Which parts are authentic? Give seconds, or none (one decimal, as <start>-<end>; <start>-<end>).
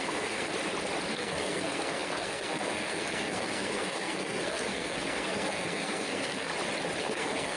0.5-1.1; 6.5-7.0